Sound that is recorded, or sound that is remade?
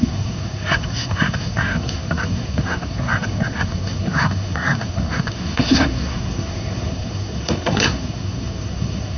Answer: remade